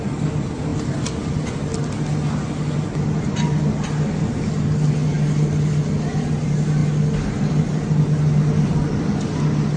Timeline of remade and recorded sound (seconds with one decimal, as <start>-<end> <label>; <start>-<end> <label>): 0.0-9.8 recorded

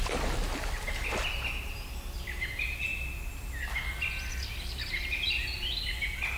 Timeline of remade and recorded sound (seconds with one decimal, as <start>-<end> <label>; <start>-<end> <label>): 0.0-6.4 recorded

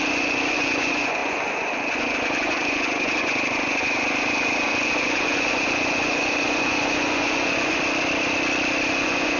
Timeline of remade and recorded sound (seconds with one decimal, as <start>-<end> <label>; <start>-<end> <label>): 0.0-7.8 remade; 7.8-8.9 recorded; 8.9-9.4 remade